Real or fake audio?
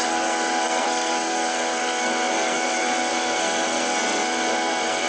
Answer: fake